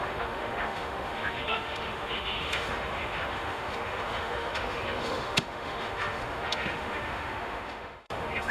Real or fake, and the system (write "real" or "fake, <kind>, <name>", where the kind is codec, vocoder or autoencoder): fake, autoencoder, DAC-VAE